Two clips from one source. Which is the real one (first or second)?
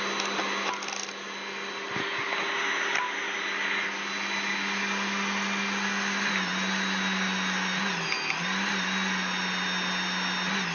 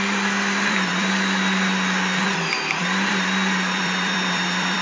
first